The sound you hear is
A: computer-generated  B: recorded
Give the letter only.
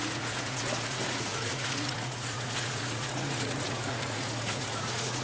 A